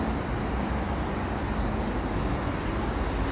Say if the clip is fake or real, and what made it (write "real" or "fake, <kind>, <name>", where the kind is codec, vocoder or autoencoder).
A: real